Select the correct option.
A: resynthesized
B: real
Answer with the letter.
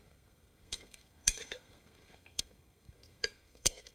A